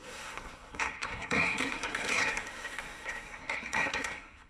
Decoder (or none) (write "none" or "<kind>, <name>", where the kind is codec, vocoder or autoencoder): codec, SNAC